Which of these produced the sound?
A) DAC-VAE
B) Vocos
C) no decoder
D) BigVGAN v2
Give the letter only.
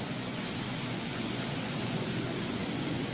B